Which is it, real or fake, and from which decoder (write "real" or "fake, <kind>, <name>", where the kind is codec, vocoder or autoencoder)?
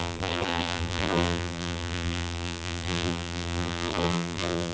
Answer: fake, vocoder, BigVGAN v2